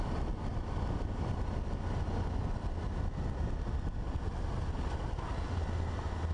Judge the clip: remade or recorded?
recorded